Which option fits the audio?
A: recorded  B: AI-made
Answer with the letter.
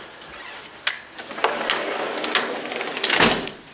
A